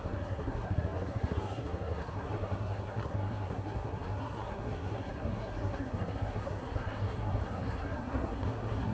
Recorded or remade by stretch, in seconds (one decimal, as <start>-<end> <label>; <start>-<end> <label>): 0.0-8.9 remade